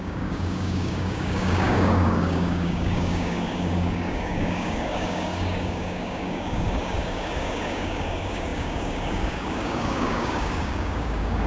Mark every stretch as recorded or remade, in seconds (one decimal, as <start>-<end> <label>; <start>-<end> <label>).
0.0-11.5 remade